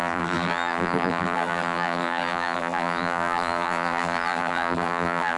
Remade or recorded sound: remade